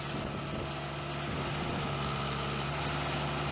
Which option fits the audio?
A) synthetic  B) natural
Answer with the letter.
B